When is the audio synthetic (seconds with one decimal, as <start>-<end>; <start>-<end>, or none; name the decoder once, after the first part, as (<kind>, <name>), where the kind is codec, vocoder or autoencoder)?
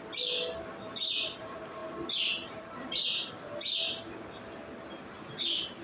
none